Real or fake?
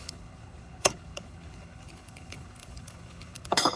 fake